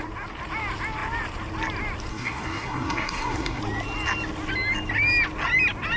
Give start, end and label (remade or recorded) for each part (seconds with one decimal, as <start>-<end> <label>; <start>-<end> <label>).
0.0-2.1 recorded; 2.1-3.6 remade; 3.6-6.0 recorded